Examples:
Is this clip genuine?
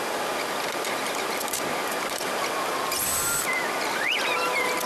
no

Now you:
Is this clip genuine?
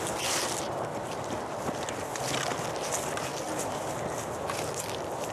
yes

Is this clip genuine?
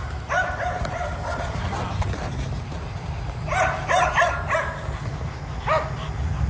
no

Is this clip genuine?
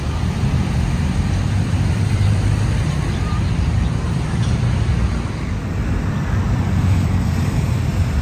no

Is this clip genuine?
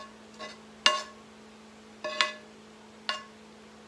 yes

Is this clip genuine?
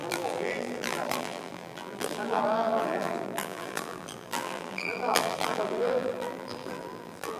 no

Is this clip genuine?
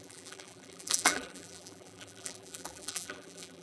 no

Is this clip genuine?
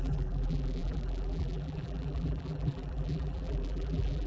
no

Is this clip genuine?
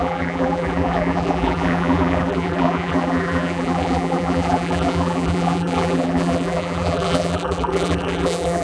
no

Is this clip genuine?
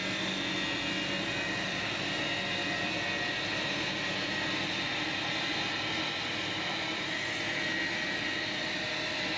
yes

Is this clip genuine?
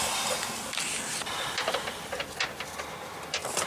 yes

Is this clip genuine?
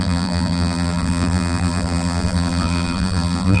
no